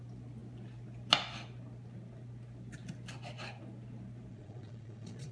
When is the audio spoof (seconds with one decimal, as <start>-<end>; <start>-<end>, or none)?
4.3-5.3